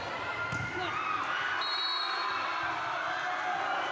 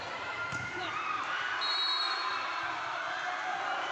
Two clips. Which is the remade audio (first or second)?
second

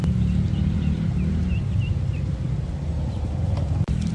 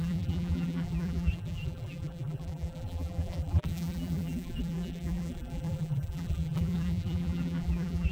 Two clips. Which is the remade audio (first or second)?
second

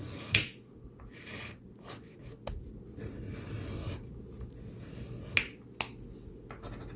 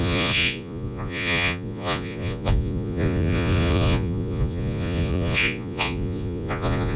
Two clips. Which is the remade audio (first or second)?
second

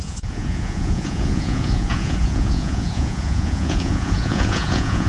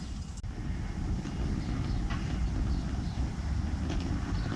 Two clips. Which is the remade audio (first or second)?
first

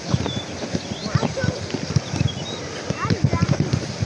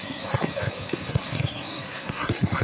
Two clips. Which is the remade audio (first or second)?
second